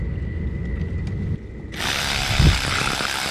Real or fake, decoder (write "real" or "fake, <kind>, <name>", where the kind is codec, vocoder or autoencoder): real